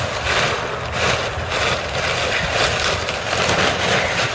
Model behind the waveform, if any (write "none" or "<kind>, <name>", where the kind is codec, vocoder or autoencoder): none